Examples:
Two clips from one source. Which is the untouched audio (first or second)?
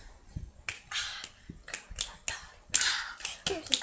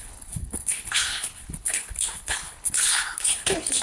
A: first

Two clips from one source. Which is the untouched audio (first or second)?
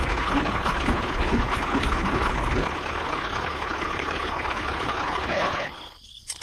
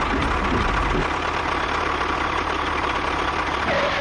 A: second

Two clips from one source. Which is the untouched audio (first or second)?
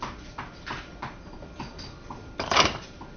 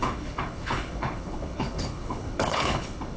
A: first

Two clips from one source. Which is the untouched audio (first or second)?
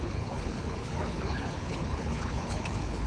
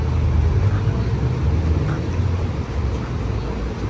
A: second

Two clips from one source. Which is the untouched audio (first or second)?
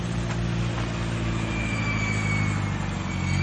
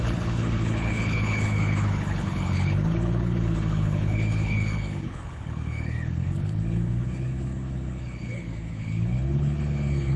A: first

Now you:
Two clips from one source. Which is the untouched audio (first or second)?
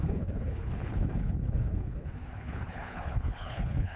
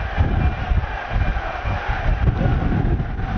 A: second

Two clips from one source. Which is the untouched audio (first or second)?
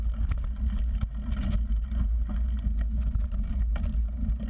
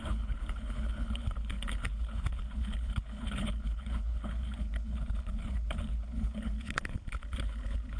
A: first